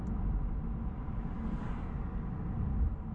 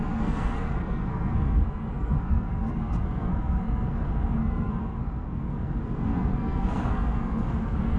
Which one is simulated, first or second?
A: second